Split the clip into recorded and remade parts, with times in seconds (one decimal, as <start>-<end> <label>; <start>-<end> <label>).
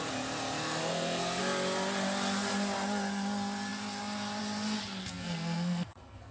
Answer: 0.0-0.8 recorded; 0.8-1.4 remade; 1.4-5.0 recorded; 5.0-6.3 remade